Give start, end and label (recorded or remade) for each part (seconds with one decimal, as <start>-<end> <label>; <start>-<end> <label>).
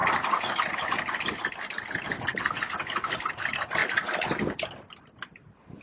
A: 0.0-3.8 recorded; 3.8-5.0 remade; 5.0-5.8 recorded